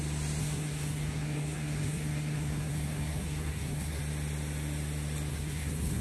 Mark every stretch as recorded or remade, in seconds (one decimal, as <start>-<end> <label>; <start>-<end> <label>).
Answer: 0.0-0.4 recorded; 0.4-4.0 remade; 4.0-5.3 recorded; 5.3-6.0 remade